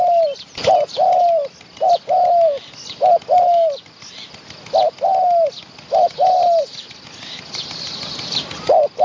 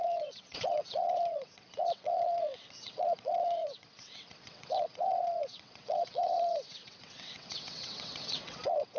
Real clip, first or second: first